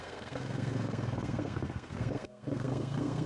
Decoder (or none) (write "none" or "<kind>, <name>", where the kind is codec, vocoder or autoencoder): codec, SNAC